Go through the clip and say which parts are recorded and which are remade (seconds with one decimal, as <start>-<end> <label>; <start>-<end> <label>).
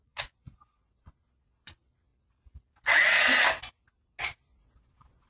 0.0-2.1 remade; 2.1-4.2 recorded; 4.2-5.3 remade